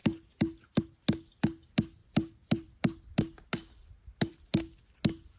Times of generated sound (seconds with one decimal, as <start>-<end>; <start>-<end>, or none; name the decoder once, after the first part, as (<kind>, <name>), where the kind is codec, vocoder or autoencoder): 2.0-4.8 (vocoder, BigVGAN v2)